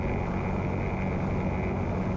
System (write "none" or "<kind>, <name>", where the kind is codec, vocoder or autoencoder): none